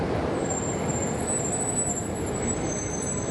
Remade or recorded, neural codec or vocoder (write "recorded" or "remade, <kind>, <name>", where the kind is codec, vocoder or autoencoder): recorded